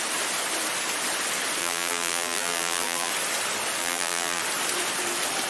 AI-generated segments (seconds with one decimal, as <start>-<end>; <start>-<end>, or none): 1.6-3.1; 3.8-4.4